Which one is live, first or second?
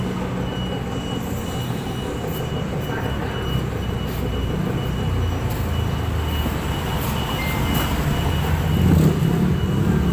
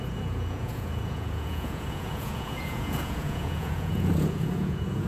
first